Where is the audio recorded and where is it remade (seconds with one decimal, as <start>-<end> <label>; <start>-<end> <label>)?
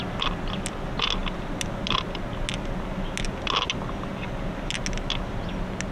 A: 0.0-5.9 recorded